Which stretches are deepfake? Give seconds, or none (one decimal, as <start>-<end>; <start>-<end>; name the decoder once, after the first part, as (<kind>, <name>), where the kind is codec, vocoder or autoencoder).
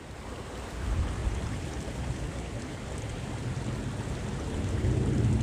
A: 1.2-2.8 (vocoder, BigVGAN v2)